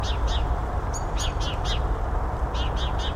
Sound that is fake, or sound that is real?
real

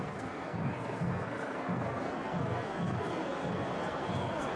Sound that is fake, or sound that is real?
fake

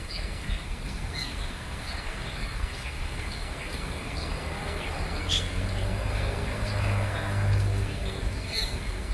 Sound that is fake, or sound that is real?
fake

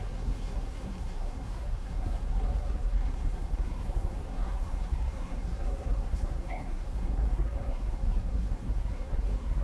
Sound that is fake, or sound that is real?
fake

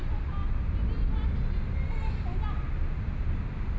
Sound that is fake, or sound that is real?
real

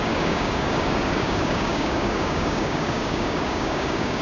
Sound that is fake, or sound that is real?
fake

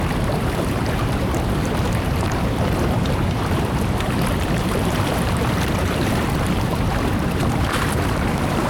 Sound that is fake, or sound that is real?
fake